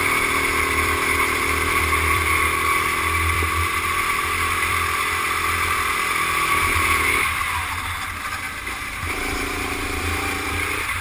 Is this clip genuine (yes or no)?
no